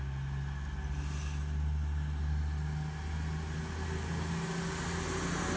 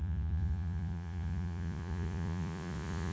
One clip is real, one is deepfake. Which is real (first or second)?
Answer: first